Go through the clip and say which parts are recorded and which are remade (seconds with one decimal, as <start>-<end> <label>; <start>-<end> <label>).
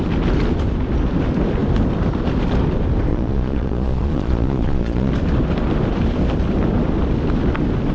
0.0-3.1 recorded; 3.1-5.1 remade; 5.1-7.9 recorded